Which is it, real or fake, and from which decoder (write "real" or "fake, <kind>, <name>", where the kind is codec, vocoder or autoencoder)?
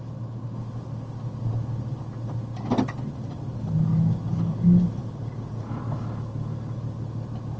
real